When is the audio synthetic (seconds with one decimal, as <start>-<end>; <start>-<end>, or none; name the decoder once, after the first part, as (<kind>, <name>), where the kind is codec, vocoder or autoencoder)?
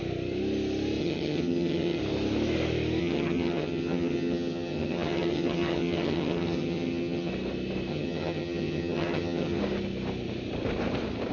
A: 1.0-2.0 (vocoder, HiFi-GAN); 3.0-7.3; 7.9-9.6